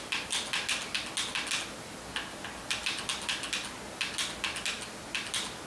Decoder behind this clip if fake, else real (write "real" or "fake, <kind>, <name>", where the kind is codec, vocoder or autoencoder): real